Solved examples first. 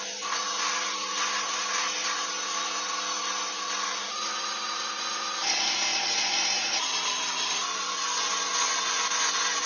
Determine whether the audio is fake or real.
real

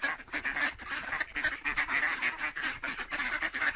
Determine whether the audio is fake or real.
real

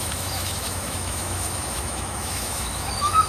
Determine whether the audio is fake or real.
fake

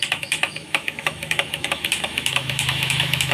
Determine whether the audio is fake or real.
fake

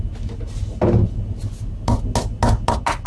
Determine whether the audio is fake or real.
real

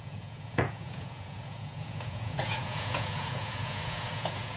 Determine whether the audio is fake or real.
fake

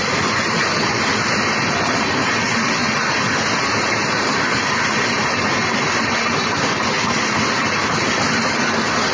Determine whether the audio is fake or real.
real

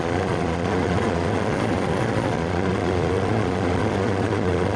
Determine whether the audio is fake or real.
fake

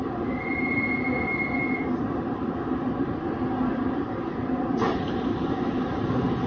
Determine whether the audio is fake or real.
real